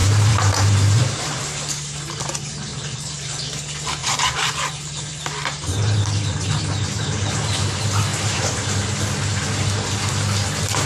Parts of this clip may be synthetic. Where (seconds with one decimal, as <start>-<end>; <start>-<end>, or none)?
0.0-2.0; 2.7-3.4; 4.0-7.3; 8.1-8.9